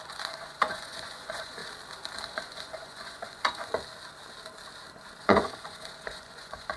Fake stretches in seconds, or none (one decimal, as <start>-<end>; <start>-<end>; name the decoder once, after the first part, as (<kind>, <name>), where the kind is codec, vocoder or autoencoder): 0.0-1.6 (vocoder, Vocos); 2.3-3.7; 5.2-6.8